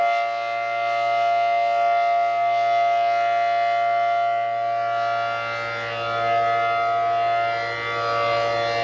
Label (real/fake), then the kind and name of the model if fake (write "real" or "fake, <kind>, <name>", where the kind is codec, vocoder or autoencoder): real